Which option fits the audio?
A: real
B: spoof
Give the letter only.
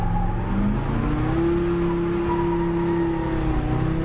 A